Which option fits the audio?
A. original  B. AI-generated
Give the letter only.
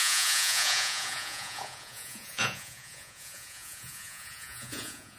B